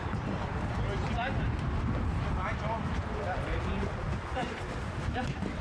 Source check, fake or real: fake